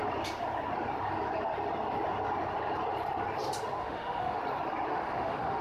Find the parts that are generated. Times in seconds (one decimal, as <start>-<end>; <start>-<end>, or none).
3.8-4.4; 4.9-5.6